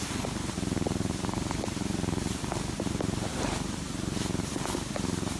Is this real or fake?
real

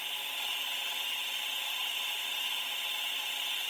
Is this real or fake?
fake